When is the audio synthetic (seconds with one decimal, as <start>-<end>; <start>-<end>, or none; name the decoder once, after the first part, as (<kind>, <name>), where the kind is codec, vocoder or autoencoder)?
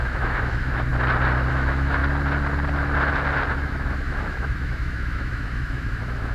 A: 0.0-0.9 (autoencoder, DAC-VAE); 1.5-2.0; 3.5-6.3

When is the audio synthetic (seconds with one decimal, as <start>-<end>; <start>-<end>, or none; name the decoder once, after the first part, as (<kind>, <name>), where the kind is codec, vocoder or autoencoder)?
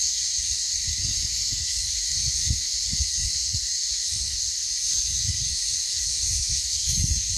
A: 0.0-7.4 (codec, SNAC)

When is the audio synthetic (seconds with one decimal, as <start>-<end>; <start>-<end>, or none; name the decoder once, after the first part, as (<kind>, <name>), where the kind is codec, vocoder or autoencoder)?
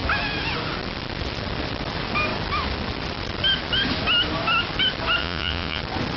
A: 5.2-5.8 (vocoder, Vocos)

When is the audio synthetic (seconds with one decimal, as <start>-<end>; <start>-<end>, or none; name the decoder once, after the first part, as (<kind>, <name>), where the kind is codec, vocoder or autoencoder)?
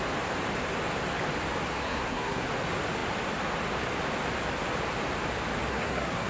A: 1.8-2.5 (codec, SNAC); 5.7-6.3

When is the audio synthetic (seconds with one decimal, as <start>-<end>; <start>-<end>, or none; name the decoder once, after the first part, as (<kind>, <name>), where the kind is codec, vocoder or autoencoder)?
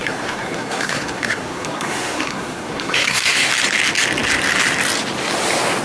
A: 0.0-3.5 (codec, SNAC)